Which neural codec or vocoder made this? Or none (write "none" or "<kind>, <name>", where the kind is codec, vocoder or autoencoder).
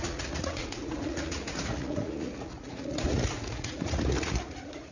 vocoder, Vocos